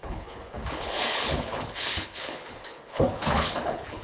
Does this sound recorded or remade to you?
remade